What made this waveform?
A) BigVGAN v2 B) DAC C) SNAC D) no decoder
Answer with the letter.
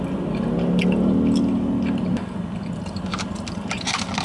D